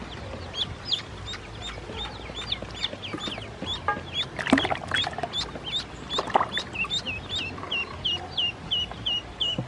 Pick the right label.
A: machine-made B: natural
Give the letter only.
B